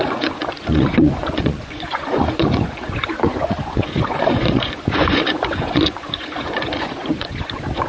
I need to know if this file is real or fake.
fake